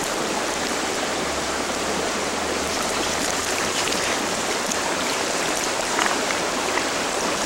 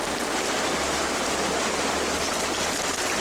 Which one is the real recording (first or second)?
second